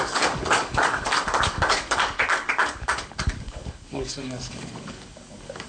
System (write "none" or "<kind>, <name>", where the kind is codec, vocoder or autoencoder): codec, DAC